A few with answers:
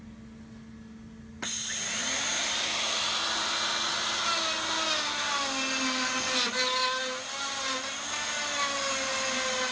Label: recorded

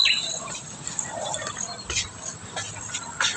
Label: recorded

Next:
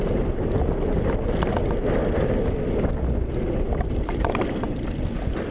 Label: recorded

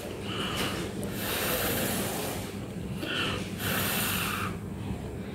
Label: recorded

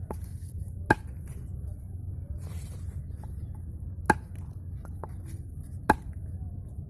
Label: recorded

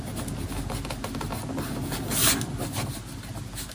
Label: recorded